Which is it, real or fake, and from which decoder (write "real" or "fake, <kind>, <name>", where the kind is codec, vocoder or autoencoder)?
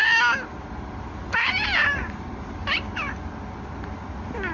real